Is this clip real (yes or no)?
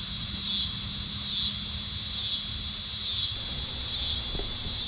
yes